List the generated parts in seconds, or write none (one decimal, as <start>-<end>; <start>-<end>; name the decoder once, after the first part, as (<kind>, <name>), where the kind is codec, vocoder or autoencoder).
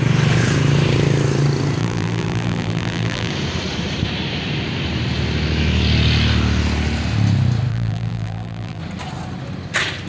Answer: 1.8-3.3 (vocoder, BigVGAN v2); 7.7-8.8